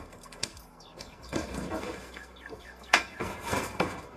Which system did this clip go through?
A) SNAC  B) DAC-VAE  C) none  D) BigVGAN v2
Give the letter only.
A